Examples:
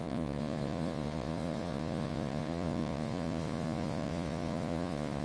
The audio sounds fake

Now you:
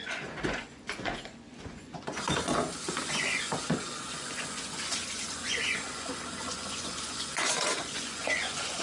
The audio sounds fake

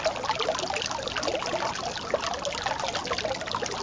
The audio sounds real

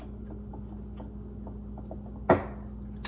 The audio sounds real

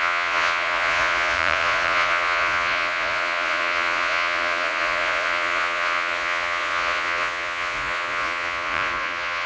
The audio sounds fake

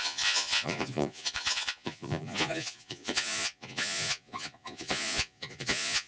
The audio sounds fake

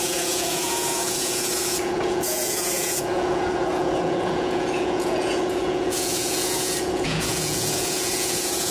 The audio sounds fake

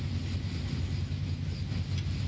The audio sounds real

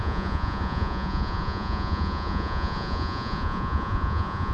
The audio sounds fake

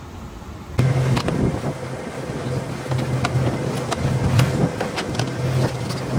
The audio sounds real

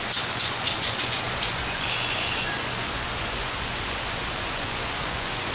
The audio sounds fake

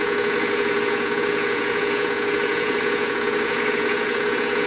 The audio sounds fake